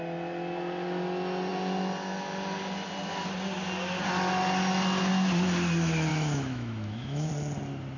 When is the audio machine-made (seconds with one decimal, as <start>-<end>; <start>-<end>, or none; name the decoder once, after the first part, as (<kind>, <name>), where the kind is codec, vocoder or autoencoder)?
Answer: 6.1-7.3 (autoencoder, DAC-VAE)